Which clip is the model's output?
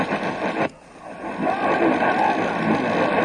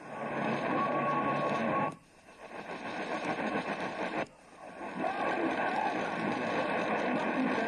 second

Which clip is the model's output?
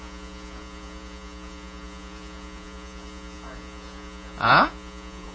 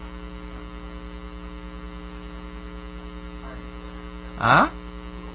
first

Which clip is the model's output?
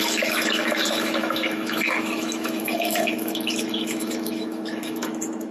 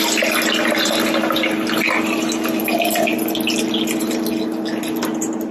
first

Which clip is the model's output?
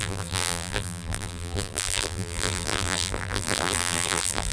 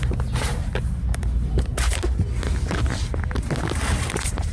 first